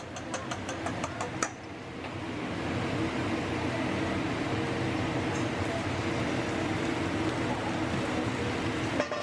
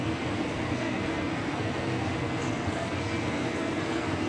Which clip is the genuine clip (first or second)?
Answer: first